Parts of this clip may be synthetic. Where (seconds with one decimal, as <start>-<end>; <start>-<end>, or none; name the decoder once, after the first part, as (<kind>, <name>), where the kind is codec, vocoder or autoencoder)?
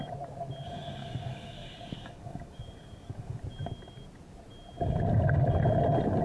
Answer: 1.0-3.4 (codec, DAC)